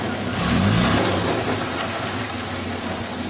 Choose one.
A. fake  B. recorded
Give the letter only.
B